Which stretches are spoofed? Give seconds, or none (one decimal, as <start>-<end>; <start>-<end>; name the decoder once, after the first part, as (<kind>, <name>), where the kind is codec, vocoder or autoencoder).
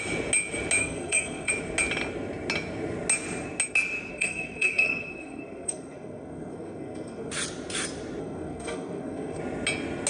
0.8-1.5 (codec, SNAC); 4.1-7.3; 8.2-9.4